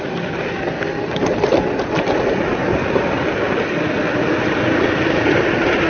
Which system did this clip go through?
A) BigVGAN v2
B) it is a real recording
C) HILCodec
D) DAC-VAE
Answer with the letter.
B